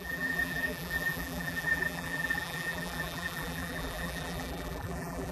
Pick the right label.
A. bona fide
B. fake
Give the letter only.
B